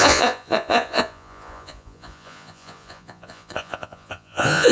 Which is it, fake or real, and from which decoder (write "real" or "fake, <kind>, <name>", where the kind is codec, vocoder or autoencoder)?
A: fake, vocoder, Vocos